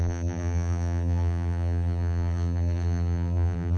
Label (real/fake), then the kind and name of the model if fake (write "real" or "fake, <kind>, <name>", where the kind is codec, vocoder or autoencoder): fake, vocoder, BigVGAN v2